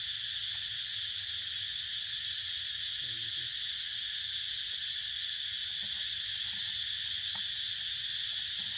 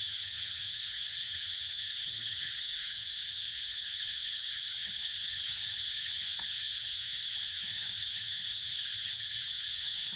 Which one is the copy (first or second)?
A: second